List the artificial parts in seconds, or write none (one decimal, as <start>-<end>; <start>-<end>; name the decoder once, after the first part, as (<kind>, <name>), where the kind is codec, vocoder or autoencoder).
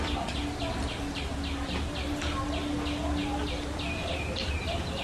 none